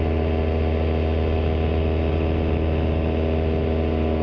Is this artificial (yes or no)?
no